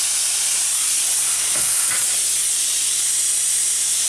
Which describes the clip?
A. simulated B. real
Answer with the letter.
B